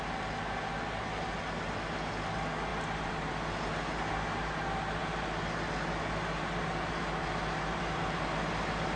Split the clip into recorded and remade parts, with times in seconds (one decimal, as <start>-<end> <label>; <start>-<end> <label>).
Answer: 0.0-9.0 recorded